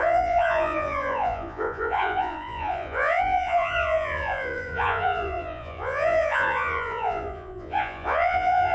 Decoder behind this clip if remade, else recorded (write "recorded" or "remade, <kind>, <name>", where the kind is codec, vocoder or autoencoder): remade, vocoder, Vocos